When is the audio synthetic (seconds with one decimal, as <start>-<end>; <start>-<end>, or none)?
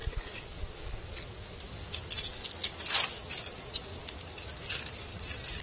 3.4-3.9; 4.5-5.6